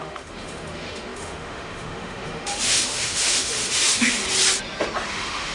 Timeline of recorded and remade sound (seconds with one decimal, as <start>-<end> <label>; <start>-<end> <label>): 0.0-4.2 remade; 4.2-5.1 recorded; 5.1-5.5 remade